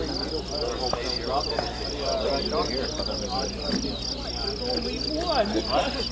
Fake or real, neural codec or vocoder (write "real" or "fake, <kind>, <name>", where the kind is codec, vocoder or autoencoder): real